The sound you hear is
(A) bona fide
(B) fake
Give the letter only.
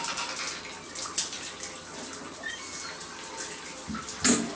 A